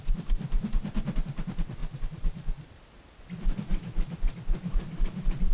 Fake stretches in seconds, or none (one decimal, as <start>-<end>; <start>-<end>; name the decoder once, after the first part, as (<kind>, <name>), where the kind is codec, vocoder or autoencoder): none